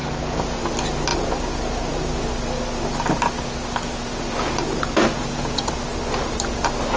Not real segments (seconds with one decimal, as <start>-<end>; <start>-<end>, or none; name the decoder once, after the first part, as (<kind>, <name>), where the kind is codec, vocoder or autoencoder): 1.1-2.1 (vocoder, Vocos); 5.1-5.7